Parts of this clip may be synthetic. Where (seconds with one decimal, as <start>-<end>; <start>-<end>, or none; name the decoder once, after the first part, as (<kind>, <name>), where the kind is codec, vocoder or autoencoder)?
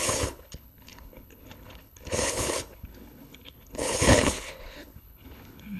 0.0-5.8 (codec, HILCodec)